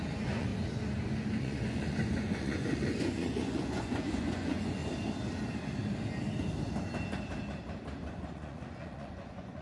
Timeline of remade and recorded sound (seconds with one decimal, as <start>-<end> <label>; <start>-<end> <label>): 0.0-0.5 remade; 0.5-1.4 recorded; 1.4-4.8 remade; 4.8-8.2 recorded; 8.2-9.6 remade